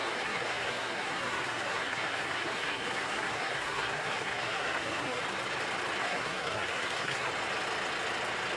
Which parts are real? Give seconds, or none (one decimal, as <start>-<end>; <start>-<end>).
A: 5.2-6.0; 7.3-8.6